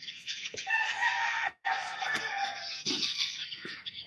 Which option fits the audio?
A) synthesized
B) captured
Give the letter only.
A